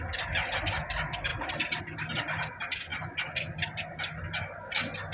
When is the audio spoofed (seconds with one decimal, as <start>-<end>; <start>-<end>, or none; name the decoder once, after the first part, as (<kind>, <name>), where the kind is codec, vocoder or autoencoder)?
none